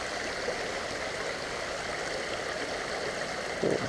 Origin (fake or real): real